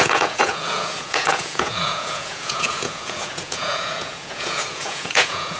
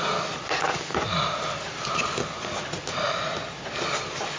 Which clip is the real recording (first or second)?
second